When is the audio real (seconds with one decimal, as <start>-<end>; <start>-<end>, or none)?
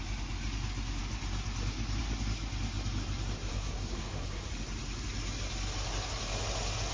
0.0-3.5; 4.5-6.9